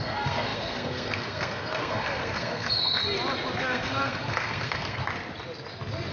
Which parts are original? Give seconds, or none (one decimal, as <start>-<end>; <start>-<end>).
3.0-3.6; 5.0-6.1